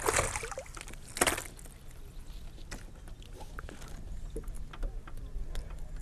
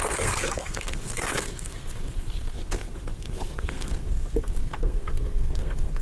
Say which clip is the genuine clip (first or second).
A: first